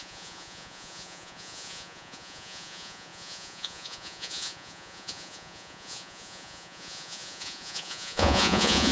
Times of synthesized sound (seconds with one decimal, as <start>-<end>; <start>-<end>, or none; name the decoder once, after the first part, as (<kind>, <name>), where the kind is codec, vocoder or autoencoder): 0.0-8.9 (vocoder, Vocos)